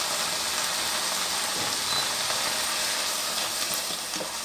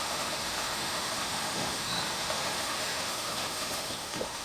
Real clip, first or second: first